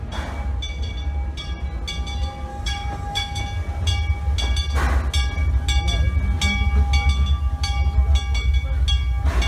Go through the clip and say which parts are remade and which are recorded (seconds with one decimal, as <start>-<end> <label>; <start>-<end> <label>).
0.0-2.5 recorded; 2.5-3.4 remade; 3.4-9.5 recorded